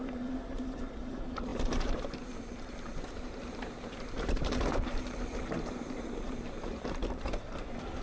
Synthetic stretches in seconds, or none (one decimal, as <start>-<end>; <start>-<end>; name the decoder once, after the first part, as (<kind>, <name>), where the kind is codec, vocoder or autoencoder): 0.0-8.0 (vocoder, BigVGAN v2)